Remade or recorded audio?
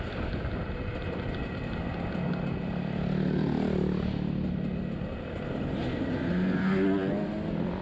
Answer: recorded